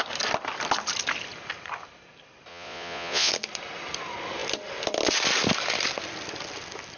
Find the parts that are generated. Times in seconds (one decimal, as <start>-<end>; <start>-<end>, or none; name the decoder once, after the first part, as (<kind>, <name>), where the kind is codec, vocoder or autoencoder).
2.5-3.3 (vocoder, Vocos)